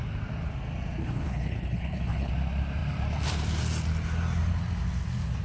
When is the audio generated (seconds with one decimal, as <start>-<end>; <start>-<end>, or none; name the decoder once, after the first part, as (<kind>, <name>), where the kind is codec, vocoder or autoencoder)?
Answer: 1.0-2.3 (codec, HILCodec)